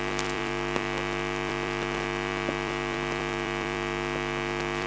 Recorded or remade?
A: remade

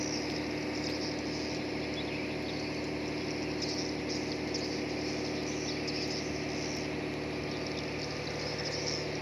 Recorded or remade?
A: recorded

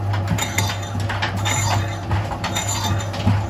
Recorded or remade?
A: recorded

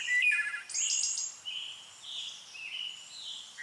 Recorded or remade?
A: recorded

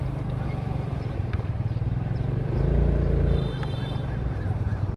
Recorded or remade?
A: remade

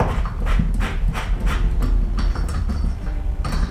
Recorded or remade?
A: remade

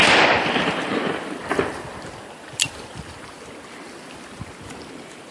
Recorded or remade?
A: recorded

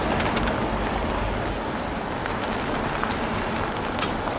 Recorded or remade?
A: recorded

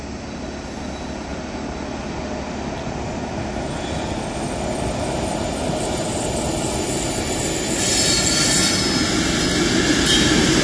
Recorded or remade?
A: recorded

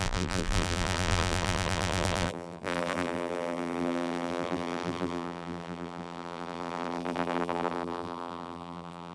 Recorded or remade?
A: remade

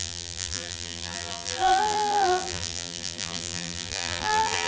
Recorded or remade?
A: remade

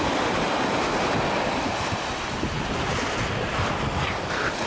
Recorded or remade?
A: recorded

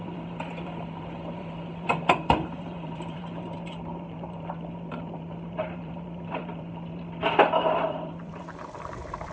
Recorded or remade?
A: remade